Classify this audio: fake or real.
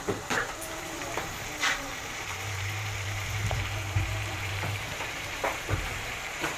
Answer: fake